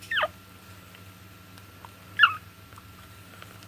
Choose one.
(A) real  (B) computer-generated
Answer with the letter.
A